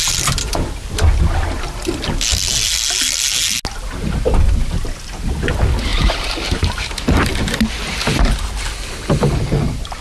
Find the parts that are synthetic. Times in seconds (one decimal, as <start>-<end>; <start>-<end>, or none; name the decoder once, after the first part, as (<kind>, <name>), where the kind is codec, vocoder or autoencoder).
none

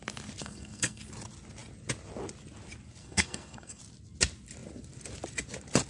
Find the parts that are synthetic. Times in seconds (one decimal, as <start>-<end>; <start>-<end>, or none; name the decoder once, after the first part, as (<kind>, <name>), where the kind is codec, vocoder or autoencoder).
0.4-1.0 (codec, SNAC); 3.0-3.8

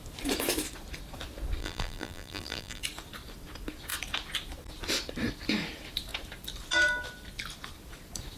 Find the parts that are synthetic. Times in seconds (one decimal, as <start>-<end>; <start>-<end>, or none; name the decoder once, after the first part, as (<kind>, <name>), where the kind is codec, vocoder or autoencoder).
1.6-2.8 (vocoder, BigVGAN v2)

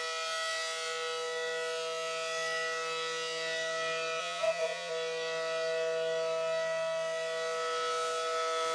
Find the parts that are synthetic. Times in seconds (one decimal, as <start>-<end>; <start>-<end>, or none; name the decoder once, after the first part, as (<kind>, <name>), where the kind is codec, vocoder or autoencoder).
4.2-4.9 (vocoder, Vocos)

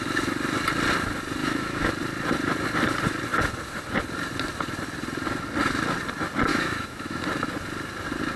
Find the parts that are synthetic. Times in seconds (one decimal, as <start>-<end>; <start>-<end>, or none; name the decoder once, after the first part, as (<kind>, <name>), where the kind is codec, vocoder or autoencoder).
1.4-1.9 (autoencoder, DAC-VAE); 6.5-7.2